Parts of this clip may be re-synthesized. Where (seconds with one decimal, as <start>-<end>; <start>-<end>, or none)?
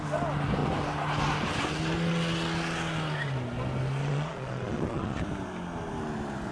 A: 4.0-5.2